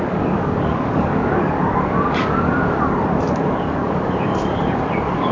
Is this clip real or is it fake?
fake